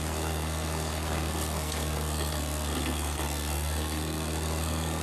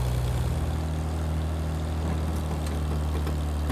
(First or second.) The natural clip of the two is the second